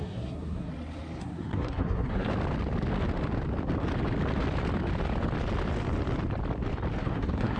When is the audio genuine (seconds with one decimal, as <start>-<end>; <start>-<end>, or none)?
0.7-1.2; 2.3-6.9